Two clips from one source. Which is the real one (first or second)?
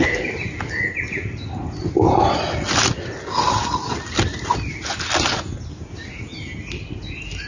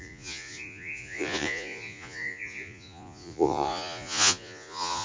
first